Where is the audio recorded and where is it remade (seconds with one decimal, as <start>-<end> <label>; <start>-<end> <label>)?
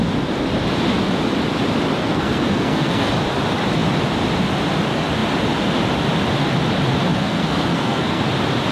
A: 0.0-2.0 recorded; 2.0-3.1 remade; 3.1-7.1 recorded; 7.1-8.2 remade; 8.2-8.7 recorded